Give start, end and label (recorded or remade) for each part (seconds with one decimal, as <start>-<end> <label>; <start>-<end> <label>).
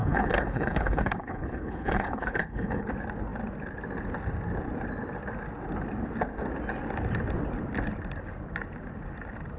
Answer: 0.0-2.9 remade; 2.9-9.6 recorded